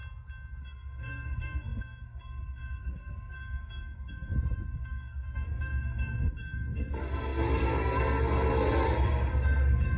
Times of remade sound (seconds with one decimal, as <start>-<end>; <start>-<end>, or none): 0.6-10.0